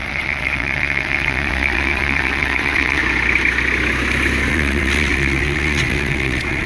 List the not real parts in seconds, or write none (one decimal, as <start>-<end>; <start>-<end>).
0.0-3.0; 4.5-6.7